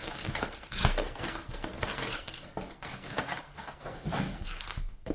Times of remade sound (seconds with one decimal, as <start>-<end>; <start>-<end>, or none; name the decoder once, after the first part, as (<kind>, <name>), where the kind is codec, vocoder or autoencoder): 0.0-5.1 (codec, SNAC)

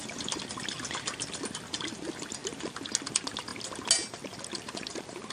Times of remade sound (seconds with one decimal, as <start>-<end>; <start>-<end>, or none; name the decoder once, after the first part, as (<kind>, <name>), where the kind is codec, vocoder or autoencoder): none

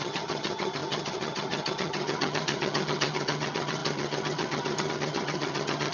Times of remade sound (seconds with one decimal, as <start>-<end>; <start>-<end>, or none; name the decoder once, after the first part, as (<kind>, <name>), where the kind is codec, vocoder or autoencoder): 0.0-5.9 (vocoder, HiFi-GAN)

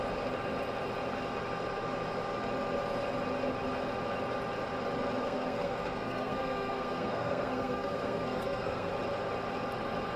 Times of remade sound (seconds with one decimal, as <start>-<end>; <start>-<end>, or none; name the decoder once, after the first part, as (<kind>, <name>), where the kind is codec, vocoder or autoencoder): 5.2-8.9 (codec, SNAC)

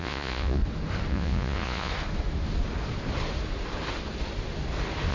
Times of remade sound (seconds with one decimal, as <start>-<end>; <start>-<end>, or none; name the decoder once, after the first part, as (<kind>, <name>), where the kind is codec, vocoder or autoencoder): 0.0-0.6 (vocoder, Vocos); 1.1-1.9

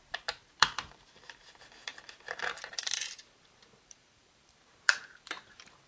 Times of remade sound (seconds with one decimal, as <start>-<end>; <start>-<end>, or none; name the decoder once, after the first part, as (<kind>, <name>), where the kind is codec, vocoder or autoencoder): 0.0-5.9 (vocoder, BigVGAN v2)